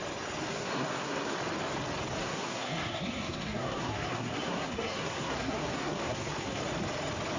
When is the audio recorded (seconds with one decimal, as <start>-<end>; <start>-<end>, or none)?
0.0-0.5; 1.4-2.2; 6.6-7.4